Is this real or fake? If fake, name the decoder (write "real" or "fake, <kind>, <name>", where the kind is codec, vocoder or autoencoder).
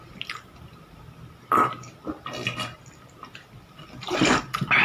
real